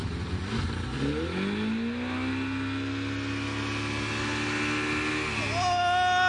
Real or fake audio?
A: real